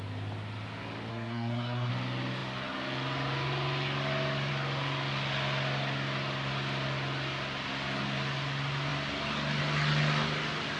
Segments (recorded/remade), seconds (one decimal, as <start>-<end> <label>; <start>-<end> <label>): 0.0-1.1 recorded; 1.1-1.9 remade; 1.9-10.8 recorded